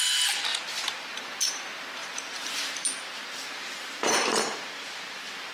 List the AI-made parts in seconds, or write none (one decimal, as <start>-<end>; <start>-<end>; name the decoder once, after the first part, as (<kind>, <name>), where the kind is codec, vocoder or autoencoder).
0.5-1.1 (vocoder, BigVGAN v2); 2.0-5.5